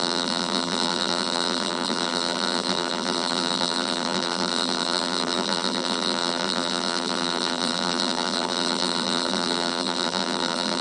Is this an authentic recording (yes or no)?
no